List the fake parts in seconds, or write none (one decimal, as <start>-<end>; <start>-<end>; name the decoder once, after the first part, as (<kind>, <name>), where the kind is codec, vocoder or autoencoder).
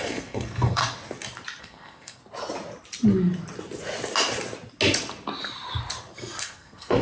0.0-0.8 (codec, SNAC); 1.6-2.2; 6.4-7.0